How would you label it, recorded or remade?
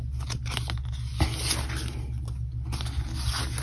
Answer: recorded